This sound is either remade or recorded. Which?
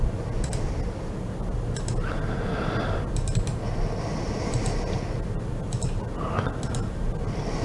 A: recorded